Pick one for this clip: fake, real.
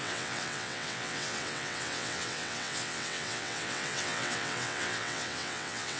fake